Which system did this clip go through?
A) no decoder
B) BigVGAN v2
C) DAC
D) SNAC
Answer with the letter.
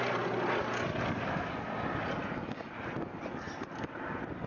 A